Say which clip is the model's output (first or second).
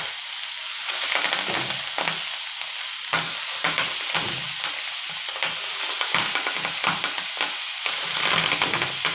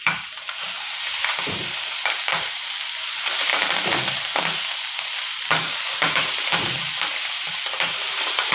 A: second